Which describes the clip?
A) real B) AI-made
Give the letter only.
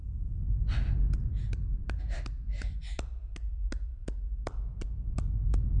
A